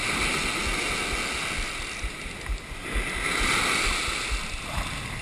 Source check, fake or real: real